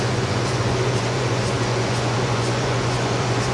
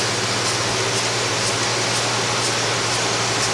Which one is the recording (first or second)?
second